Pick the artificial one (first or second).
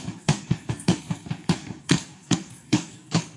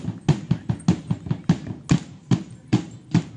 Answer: first